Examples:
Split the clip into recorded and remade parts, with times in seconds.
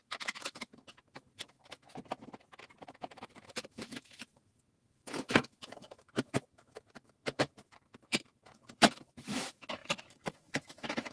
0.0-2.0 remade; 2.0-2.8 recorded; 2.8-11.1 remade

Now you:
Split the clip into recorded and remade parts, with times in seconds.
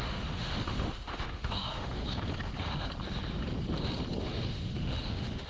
0.0-2.0 remade; 2.0-4.2 recorded; 4.2-5.5 remade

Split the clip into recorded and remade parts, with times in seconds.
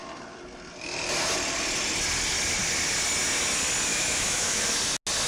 0.0-3.9 recorded; 3.9-4.7 remade; 4.7-5.3 recorded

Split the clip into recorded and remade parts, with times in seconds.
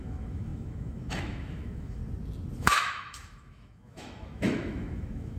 0.0-2.0 remade; 2.0-2.6 recorded; 2.6-5.4 remade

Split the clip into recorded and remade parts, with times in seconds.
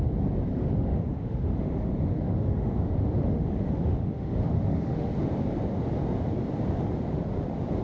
0.0-0.5 recorded; 0.5-5.1 remade; 5.1-7.8 recorded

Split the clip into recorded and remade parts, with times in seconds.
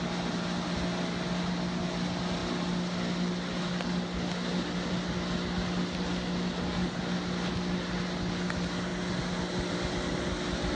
0.0-10.8 recorded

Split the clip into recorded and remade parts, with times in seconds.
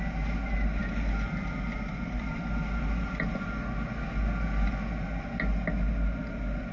0.0-6.7 recorded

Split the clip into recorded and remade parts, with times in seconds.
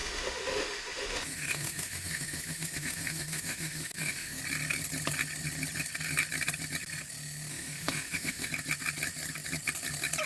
0.0-4.4 remade; 4.4-7.5 recorded; 7.5-8.5 remade; 8.5-10.3 recorded